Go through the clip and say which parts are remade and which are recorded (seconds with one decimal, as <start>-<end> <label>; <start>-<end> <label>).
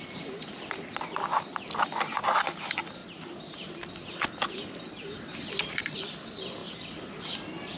0.0-7.8 recorded